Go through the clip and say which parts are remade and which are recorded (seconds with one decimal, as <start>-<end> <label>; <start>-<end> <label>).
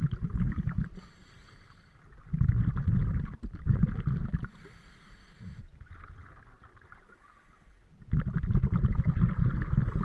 0.0-10.0 recorded